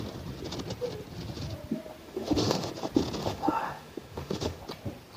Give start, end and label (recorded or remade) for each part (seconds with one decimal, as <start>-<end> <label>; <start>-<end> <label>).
0.0-2.0 recorded; 2.0-2.7 remade; 2.7-3.2 recorded; 3.2-4.6 remade; 4.6-5.2 recorded